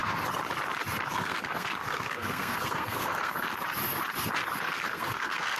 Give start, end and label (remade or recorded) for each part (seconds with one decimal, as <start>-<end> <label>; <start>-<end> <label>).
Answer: 0.0-1.1 recorded; 1.1-3.5 remade; 3.5-4.6 recorded; 4.6-5.6 remade

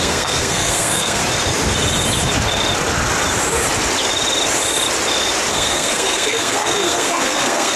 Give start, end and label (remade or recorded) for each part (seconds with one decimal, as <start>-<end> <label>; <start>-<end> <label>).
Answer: 0.0-1.2 remade; 1.2-5.5 recorded; 5.5-7.8 remade

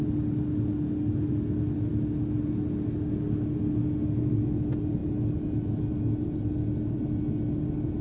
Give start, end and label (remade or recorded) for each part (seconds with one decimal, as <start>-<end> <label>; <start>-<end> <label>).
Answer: 0.0-8.0 recorded

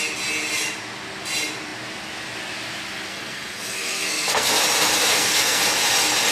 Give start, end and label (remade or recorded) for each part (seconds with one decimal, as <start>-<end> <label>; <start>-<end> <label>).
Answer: 0.0-3.1 recorded; 3.1-4.5 remade; 4.5-5.0 recorded; 5.0-5.6 remade; 5.6-6.3 recorded

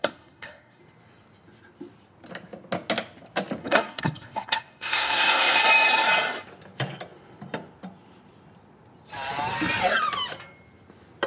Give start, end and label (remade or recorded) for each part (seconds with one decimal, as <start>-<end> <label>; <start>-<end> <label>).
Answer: 0.0-0.8 remade; 0.8-3.6 recorded; 3.6-5.6 remade; 5.6-11.3 recorded

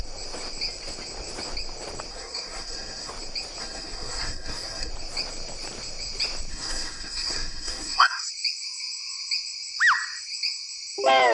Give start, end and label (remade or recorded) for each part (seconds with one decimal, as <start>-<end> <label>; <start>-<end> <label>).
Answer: 0.0-2.1 recorded; 2.1-3.1 remade; 3.1-3.6 recorded; 3.6-4.9 remade; 4.9-6.5 recorded; 6.5-8.3 remade; 8.3-11.3 recorded